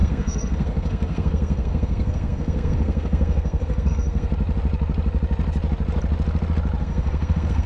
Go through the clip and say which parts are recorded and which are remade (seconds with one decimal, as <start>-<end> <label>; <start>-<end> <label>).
0.0-4.3 remade; 4.3-6.8 recorded; 6.8-7.7 remade